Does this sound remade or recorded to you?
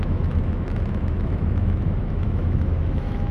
remade